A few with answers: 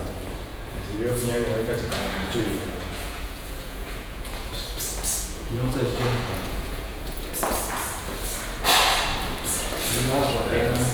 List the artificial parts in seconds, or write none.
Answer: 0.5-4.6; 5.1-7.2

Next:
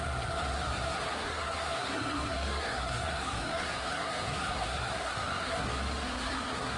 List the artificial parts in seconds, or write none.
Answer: 0.0-6.8

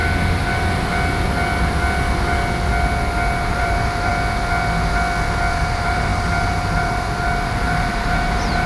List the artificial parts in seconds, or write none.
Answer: 3.5-4.1; 5.5-8.7

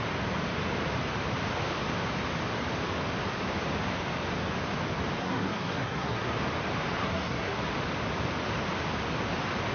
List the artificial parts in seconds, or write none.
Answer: 5.2-6.4; 7.0-7.6

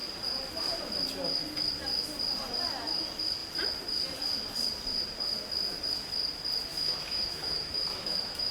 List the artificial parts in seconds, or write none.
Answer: 6.7-8.5

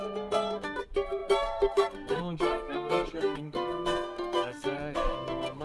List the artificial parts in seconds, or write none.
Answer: 0.0-5.6

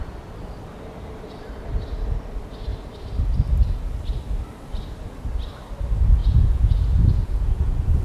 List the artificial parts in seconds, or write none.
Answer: 6.2-8.0

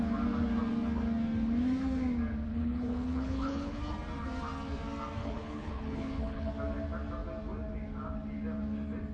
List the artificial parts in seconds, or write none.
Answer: 2.5-3.8; 5.2-6.5